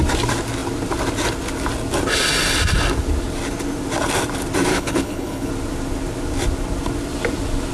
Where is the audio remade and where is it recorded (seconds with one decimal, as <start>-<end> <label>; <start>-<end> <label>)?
0.0-4.7 recorded; 4.7-5.5 remade; 5.5-7.7 recorded